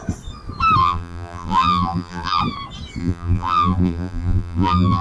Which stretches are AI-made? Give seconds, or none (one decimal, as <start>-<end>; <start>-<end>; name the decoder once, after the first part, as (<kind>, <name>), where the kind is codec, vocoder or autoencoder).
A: 0.8-2.4 (vocoder, BigVGAN v2); 3.0-5.0